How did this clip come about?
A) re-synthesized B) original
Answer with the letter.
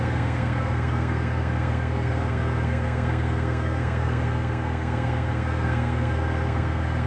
A